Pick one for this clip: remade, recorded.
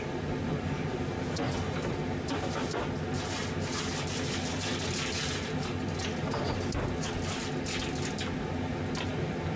recorded